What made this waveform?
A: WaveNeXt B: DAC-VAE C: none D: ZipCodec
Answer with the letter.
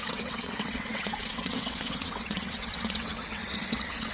A